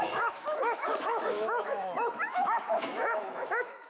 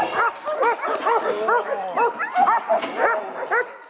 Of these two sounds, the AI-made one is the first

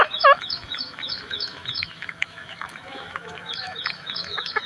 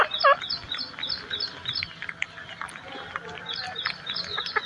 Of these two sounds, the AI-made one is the first